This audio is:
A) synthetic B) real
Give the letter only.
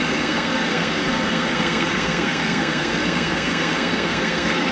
A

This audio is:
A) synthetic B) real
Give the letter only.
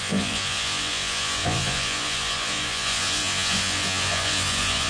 A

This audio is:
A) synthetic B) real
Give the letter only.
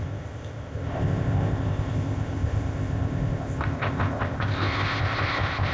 A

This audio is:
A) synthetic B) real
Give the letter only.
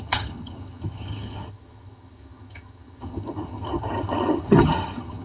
A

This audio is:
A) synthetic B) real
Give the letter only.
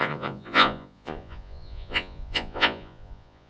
A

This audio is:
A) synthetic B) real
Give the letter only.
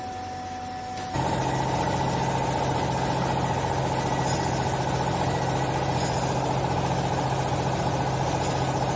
B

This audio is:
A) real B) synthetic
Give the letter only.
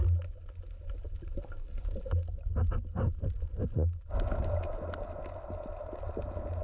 A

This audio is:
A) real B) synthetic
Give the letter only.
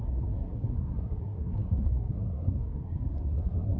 B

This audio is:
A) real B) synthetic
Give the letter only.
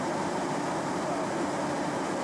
A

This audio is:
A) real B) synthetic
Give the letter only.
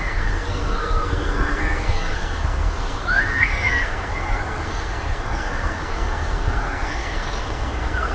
B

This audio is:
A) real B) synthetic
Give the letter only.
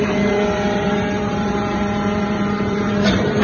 B